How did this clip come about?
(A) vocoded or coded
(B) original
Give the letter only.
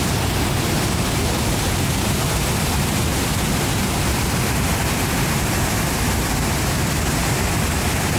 B